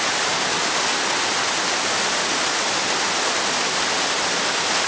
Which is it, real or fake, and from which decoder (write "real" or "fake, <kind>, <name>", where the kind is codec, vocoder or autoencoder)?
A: real